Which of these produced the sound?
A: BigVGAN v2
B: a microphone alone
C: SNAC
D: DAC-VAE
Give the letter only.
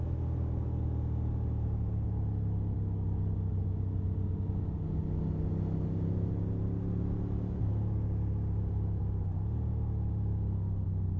B